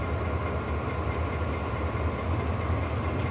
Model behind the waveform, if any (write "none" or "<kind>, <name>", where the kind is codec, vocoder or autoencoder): none